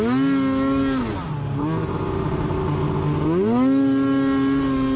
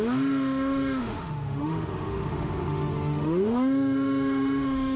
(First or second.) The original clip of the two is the first